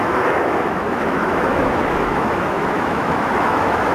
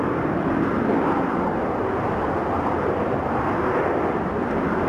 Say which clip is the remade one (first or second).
first